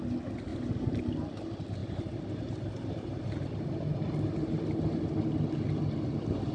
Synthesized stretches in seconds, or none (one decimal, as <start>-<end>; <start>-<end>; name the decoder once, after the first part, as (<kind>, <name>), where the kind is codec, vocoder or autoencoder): 1.8-5.1 (vocoder, BigVGAN v2)